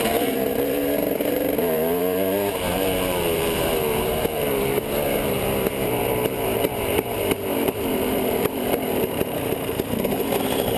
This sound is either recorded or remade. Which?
remade